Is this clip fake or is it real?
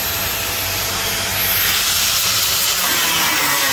real